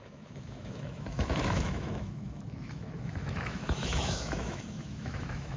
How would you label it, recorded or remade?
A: remade